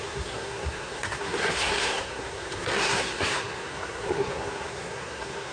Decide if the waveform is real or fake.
fake